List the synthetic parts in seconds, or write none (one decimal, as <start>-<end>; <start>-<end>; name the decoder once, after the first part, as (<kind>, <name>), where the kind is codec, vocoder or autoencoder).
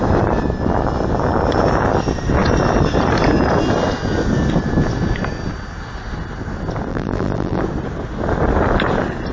6.9-7.6 (vocoder, BigVGAN v2)